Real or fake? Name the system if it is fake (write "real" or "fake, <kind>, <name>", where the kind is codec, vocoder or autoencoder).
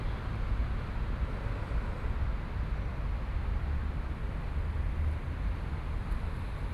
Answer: real